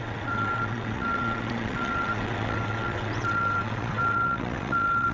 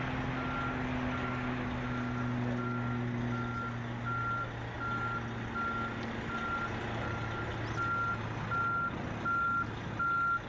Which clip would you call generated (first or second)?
first